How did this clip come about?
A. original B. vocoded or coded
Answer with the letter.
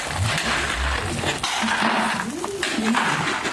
A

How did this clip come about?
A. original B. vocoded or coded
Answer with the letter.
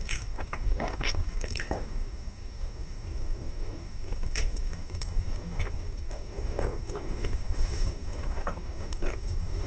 B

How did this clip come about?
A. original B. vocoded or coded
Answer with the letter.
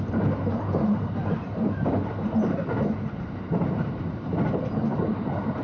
B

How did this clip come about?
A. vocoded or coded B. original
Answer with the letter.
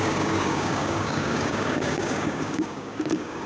A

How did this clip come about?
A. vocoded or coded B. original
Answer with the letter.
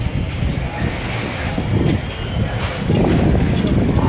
B